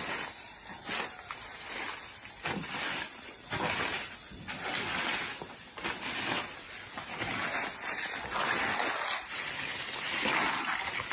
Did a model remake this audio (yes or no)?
no